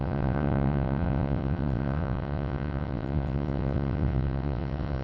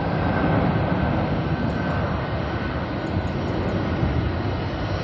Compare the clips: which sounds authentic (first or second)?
second